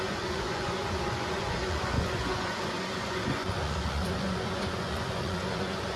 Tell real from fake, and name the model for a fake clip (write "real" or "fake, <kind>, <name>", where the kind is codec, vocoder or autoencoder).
fake, vocoder, Vocos